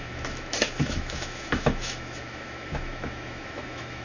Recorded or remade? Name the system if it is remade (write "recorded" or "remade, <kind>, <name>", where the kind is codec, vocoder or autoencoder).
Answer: remade, autoencoder, DAC-VAE